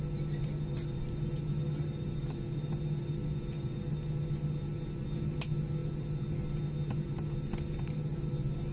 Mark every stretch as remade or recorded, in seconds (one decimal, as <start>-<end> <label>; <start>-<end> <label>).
0.0-8.7 recorded